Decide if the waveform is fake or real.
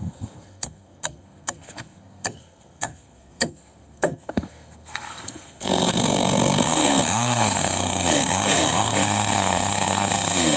fake